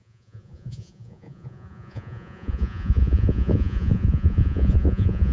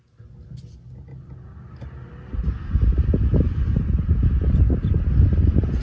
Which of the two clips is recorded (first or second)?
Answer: second